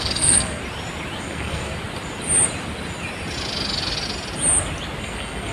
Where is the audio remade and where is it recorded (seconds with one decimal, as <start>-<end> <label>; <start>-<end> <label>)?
0.0-0.6 remade; 0.6-1.2 recorded; 1.2-1.7 remade; 1.7-5.0 recorded; 5.0-5.5 remade